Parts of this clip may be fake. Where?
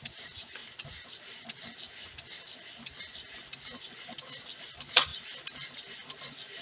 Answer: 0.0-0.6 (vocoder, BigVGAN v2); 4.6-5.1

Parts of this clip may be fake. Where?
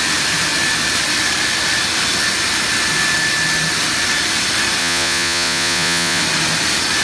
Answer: 4.8-6.2 (vocoder, Vocos)